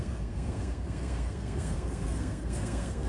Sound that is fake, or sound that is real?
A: fake